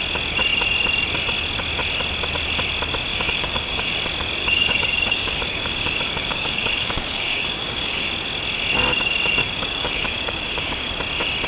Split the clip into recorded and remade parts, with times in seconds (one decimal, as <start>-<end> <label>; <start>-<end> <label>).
0.0-3.1 recorded; 3.1-3.9 remade; 3.9-4.4 recorded; 4.4-8.1 remade; 8.1-9.4 recorded; 9.4-10.9 remade; 10.9-11.5 recorded